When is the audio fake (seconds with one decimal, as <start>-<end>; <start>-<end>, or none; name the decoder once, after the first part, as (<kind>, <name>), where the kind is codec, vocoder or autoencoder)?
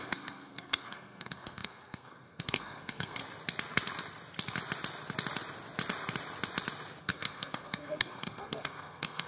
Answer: 0.0-3.2 (codec, SNAC); 7.0-9.3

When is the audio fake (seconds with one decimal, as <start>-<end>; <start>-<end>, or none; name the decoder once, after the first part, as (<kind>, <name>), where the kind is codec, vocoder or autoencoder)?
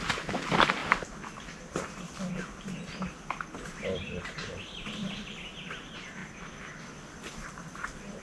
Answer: 4.6-5.6 (vocoder, BigVGAN v2); 6.2-8.2